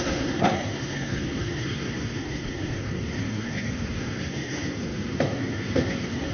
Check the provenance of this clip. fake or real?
fake